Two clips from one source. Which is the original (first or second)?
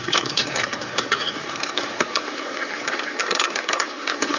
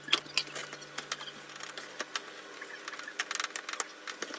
second